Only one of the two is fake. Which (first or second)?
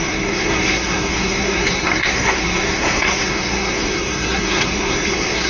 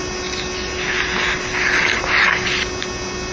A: first